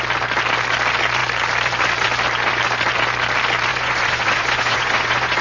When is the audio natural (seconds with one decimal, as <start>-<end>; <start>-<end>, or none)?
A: 0.0-3.7

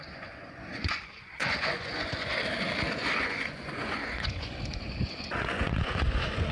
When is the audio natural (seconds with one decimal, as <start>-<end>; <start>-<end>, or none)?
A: 2.4-2.9

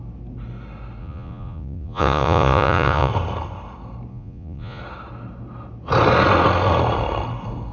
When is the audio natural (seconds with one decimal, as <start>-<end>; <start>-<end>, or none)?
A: 0.0-1.0; 3.1-4.1; 4.8-7.7

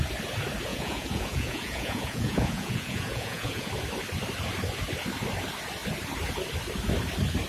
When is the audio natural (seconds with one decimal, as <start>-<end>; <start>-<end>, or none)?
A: 0.0-0.7; 3.7-7.5

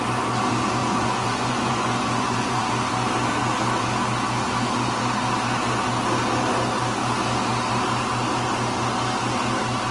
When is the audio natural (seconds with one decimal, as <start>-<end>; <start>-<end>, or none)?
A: 0.0-0.8; 2.6-9.9

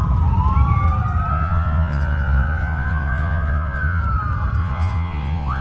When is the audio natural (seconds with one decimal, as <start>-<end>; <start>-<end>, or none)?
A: 0.0-1.3; 4.0-4.6